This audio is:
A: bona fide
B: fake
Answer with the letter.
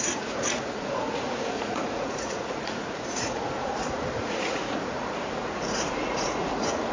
B